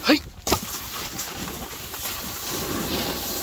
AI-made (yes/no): no